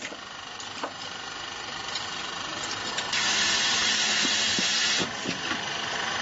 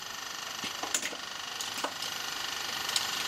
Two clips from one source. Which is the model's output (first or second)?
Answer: second